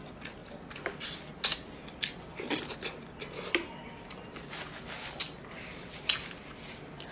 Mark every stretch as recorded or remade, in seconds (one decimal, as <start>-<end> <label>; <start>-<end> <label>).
0.0-7.1 recorded